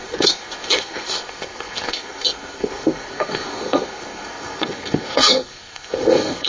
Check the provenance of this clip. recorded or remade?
remade